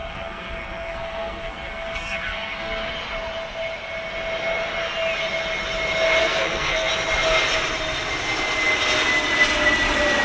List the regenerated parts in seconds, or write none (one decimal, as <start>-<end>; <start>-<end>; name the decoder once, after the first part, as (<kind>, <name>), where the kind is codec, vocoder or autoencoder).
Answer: 0.0-2.9 (codec, SNAC); 6.2-6.9